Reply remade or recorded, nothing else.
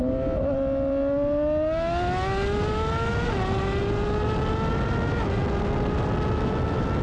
recorded